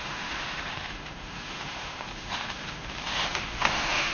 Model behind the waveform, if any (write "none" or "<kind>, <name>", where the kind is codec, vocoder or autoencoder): autoencoder, DAC-VAE